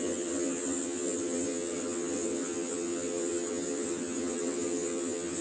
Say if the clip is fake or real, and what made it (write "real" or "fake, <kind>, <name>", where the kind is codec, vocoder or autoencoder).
fake, vocoder, HiFi-GAN